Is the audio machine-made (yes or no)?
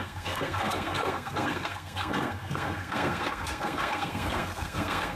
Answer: yes